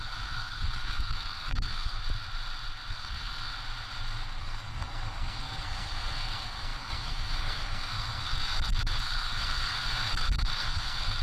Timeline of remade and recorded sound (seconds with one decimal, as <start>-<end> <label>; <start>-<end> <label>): 0.0-2.0 remade; 2.0-2.9 recorded; 2.9-3.5 remade; 3.5-4.4 recorded; 4.4-11.2 remade